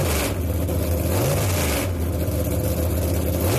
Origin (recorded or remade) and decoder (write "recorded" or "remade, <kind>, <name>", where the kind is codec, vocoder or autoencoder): recorded